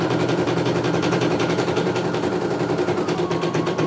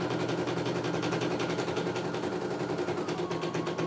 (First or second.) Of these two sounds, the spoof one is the first